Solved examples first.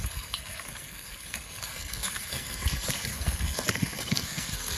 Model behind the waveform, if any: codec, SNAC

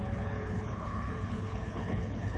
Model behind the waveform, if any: codec, HILCodec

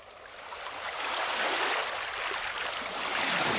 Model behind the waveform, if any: none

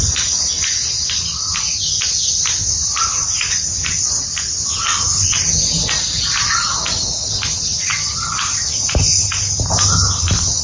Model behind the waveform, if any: none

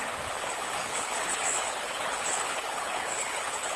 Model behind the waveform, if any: codec, HILCodec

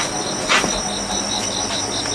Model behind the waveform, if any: none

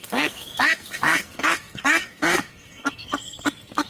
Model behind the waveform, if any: codec, SNAC